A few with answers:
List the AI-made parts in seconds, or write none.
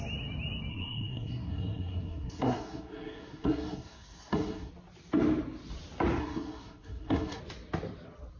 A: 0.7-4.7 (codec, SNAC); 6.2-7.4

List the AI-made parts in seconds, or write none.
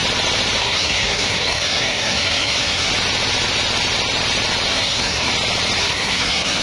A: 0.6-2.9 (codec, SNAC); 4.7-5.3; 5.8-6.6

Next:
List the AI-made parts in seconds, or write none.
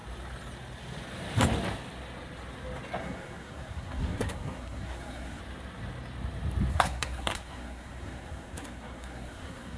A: 3.0-5.4 (codec, SNAC); 6.7-9.8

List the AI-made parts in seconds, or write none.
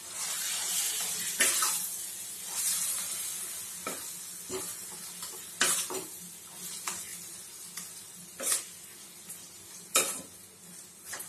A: none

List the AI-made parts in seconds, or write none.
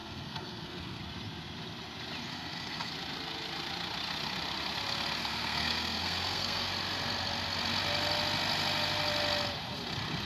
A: 0.0-1.0 (codec, SNAC); 2.3-2.9; 5.2-6.7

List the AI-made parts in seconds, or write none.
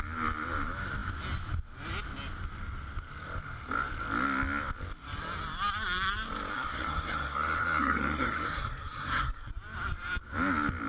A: 6.5-9.5 (codec, SNAC)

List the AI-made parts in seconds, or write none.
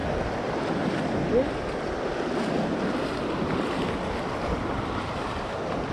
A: none